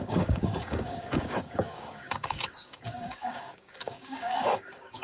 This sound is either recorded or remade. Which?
remade